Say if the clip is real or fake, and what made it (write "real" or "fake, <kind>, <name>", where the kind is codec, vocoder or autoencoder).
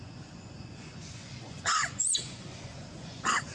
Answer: fake, vocoder, Vocos